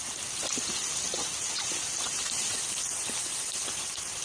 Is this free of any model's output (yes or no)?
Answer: yes